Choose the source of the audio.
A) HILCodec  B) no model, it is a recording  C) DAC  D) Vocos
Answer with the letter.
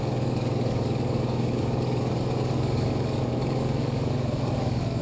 C